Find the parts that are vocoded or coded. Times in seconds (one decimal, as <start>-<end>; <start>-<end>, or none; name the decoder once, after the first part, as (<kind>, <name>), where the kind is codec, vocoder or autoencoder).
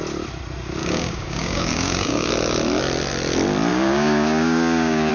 0.8-2.3 (codec, DAC); 3.7-5.1